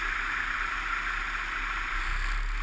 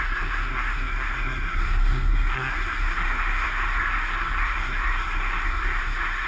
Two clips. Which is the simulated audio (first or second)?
second